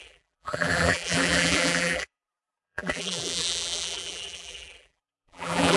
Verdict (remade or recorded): remade